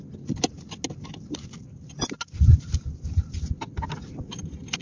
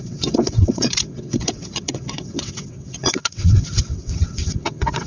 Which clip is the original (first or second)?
first